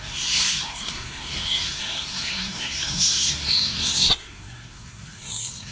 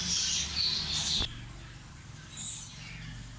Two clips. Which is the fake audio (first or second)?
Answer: first